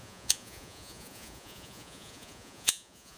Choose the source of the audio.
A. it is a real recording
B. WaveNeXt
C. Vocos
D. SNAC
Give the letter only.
C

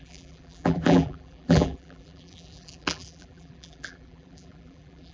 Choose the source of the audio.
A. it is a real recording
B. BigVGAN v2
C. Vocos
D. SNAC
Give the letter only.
B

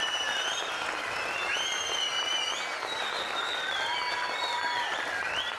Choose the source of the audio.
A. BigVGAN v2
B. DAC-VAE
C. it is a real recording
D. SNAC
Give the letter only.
C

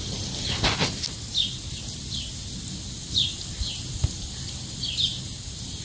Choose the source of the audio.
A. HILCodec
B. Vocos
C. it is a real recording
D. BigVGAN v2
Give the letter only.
C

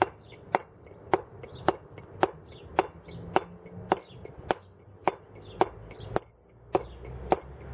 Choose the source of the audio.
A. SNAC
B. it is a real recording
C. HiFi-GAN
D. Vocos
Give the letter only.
B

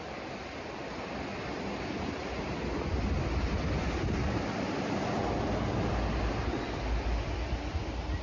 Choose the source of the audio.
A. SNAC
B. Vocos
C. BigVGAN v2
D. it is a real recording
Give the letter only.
D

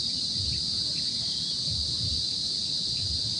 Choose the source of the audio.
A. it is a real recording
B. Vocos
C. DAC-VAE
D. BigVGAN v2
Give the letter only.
D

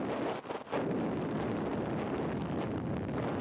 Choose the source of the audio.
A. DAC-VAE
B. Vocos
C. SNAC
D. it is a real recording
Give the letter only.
D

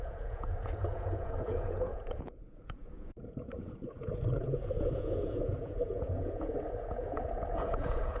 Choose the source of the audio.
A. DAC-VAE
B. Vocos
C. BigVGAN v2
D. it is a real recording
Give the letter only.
B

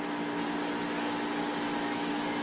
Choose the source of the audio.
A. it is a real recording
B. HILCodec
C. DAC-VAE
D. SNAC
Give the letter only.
A